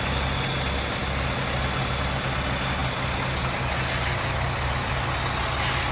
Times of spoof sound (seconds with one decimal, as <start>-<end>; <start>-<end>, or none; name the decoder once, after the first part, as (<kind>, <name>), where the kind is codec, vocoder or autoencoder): none